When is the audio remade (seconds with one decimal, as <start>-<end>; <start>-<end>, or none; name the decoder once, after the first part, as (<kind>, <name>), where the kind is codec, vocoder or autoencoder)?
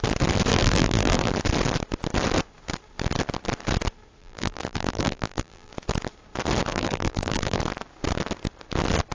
0.5-1.3 (vocoder, BigVGAN v2); 4.2-5.7; 6.7-7.6